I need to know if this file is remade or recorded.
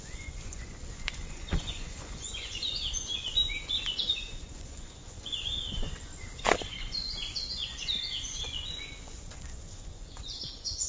remade